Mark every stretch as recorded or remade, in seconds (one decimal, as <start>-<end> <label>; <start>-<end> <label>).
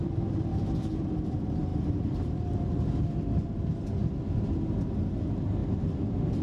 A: 0.0-0.5 recorded; 0.5-1.2 remade; 1.2-1.7 recorded; 1.7-3.6 remade; 3.6-6.4 recorded